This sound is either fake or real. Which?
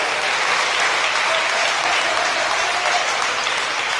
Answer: real